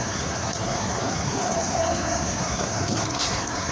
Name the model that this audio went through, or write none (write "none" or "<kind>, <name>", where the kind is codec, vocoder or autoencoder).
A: codec, SNAC